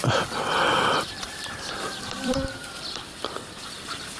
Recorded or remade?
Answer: remade